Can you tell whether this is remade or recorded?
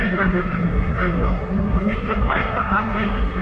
remade